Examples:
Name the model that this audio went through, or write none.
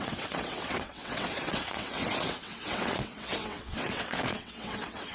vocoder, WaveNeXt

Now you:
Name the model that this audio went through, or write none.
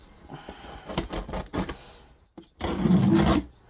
none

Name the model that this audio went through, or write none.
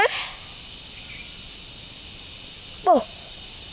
none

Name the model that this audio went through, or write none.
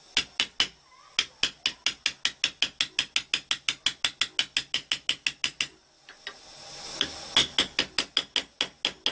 none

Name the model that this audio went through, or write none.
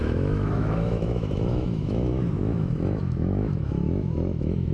autoencoder, DAC-VAE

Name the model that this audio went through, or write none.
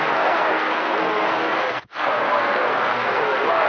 codec, SNAC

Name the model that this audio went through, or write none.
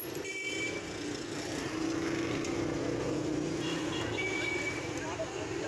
none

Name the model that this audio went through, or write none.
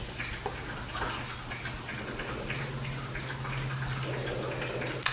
none